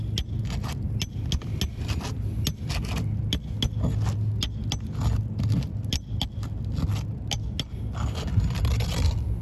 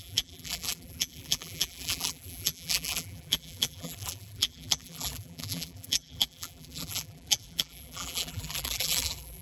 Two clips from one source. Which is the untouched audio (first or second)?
first